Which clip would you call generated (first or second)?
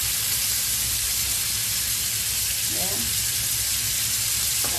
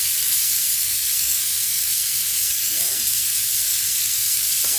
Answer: second